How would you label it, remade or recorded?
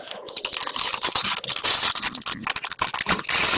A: recorded